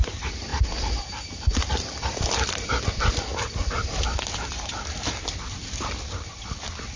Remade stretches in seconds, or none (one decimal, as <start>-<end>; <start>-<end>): 0.0-3.3; 4.5-7.0